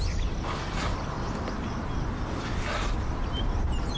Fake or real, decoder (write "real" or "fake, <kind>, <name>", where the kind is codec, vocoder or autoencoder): real